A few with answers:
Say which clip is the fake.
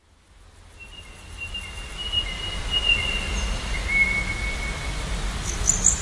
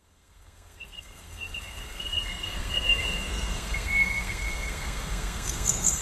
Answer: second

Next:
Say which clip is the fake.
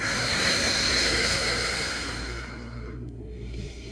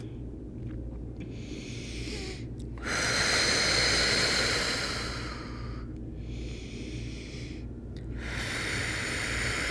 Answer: first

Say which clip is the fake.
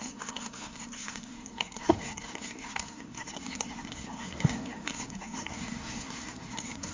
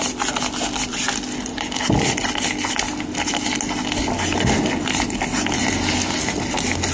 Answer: first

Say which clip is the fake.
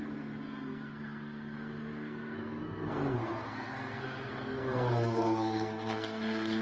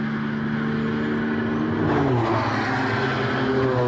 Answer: first